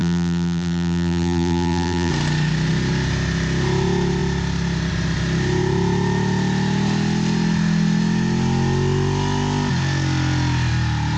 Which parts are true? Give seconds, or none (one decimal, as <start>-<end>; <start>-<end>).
2.1-11.2